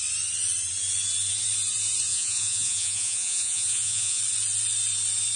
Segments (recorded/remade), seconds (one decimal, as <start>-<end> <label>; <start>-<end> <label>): 0.0-2.1 recorded; 2.1-4.2 remade; 4.2-5.4 recorded